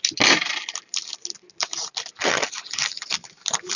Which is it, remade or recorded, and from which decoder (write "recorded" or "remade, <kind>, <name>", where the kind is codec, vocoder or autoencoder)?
recorded